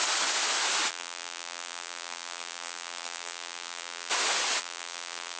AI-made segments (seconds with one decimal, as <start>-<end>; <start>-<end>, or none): 0.9-4.1; 4.6-5.4